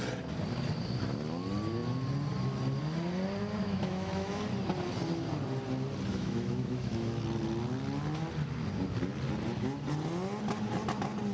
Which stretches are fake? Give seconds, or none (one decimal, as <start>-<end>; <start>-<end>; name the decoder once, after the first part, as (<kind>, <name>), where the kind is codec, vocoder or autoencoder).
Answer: 3.6-4.4 (autoencoder, DAC-VAE); 6.1-7.2